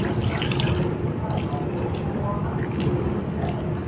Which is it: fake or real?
real